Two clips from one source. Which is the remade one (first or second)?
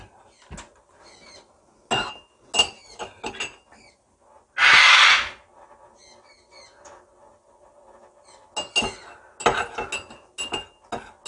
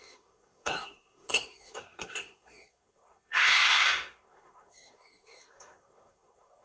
second